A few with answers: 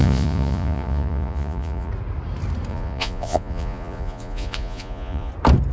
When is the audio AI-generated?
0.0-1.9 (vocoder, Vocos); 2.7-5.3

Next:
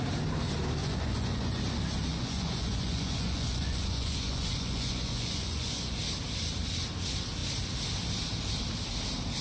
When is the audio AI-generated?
0.8-1.6 (vocoder, Vocos); 2.1-6.0

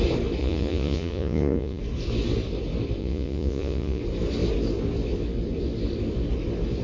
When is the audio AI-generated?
0.4-1.8 (vocoder, Vocos); 3.0-4.0